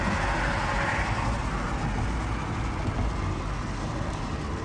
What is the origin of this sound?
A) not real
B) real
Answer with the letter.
B